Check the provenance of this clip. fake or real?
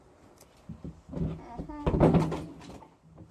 real